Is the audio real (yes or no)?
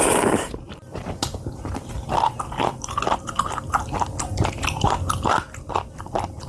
yes